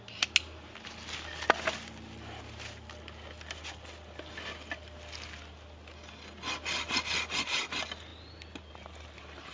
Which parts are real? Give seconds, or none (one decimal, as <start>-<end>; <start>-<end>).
0.0-9.5